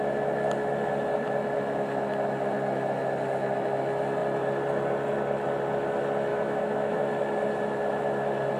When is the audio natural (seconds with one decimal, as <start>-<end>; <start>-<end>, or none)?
0.0-6.3; 7.0-8.6